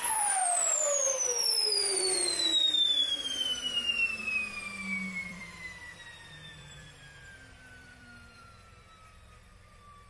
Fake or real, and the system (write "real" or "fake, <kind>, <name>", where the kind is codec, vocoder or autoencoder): fake, vocoder, BigVGAN v2